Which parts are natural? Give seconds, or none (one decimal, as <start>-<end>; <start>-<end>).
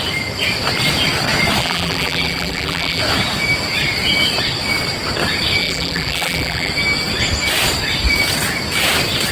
0.0-1.6; 3.0-5.6; 6.7-9.3